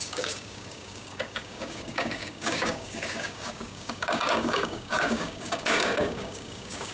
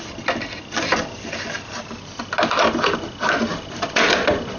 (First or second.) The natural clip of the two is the second